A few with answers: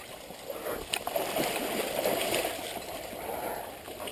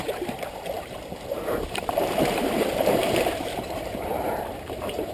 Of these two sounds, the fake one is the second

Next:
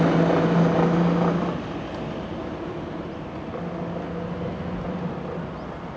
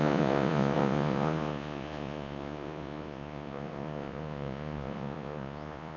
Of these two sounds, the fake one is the second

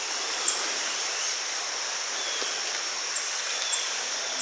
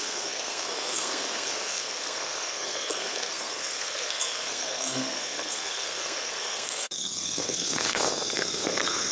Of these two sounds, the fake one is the second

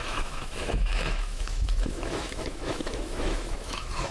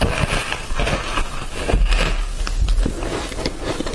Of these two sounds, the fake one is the first